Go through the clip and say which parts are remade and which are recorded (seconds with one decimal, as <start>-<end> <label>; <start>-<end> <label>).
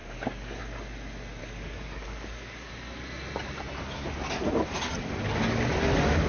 0.0-0.6 remade; 0.6-1.4 recorded; 1.4-2.7 remade; 2.7-6.3 recorded